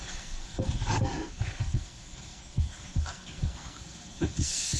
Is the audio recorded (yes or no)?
no